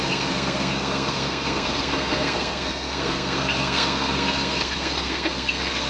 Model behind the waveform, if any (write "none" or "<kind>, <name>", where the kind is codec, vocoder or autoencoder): codec, SNAC